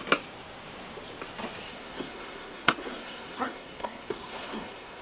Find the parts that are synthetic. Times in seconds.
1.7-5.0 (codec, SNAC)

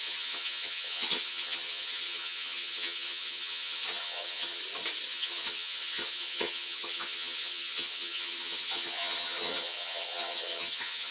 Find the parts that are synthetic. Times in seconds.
0.0-4.6 (vocoder, HiFi-GAN); 5.1-11.1

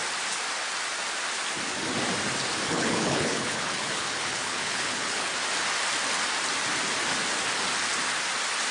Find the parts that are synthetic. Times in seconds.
2.7-5.3 (codec, HILCodec)

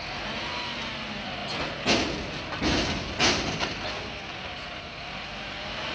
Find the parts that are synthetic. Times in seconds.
none